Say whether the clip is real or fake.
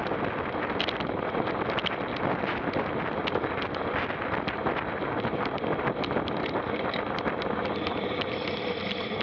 real